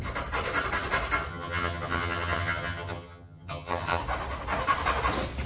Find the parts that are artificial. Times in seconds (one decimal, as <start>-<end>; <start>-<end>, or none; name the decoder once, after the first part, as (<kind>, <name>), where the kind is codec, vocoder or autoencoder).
1.3-4.0 (vocoder, HiFi-GAN)